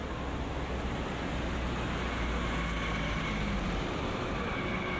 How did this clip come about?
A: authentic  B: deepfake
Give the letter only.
A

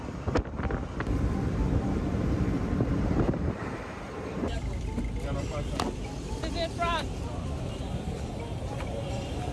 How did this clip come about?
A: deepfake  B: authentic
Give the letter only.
A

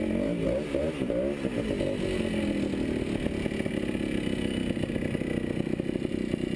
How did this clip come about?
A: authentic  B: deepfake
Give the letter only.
A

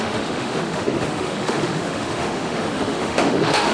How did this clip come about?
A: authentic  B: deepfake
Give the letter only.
B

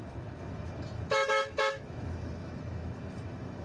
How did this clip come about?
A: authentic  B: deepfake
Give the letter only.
B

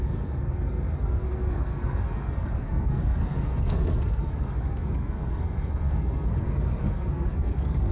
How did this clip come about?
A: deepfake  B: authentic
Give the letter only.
A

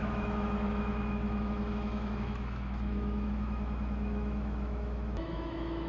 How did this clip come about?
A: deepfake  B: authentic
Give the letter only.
A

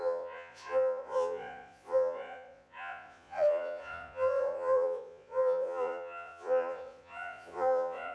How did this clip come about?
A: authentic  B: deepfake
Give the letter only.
B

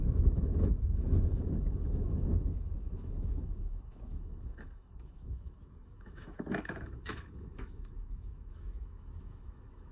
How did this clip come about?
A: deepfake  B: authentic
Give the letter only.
A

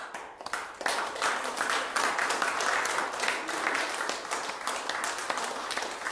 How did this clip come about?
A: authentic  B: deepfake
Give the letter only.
A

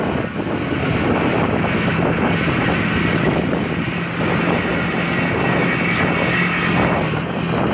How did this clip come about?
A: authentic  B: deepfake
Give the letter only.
A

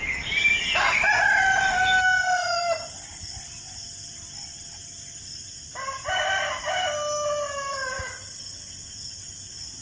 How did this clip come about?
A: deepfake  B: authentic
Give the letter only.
B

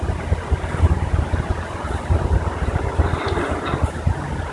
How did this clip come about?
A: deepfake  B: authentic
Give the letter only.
B